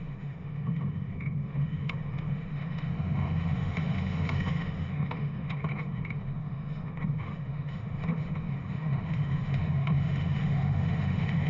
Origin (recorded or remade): remade